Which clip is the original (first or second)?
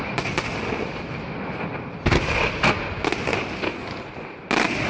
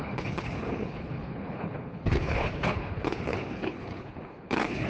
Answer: first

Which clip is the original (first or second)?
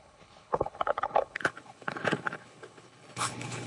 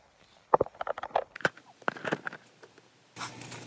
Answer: second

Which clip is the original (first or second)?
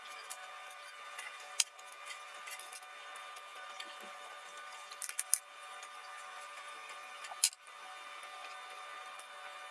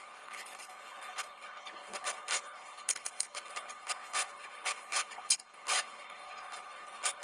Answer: first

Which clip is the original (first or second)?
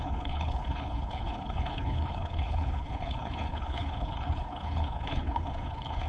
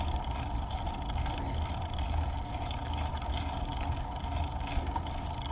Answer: second